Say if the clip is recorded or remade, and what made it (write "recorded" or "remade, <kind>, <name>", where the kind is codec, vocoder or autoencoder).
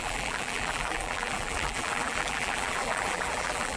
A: remade, vocoder, BigVGAN v2